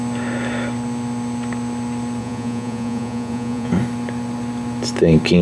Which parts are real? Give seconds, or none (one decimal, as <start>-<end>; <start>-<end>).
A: 0.0-2.2; 3.7-5.4